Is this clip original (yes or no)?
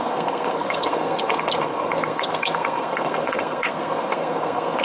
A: no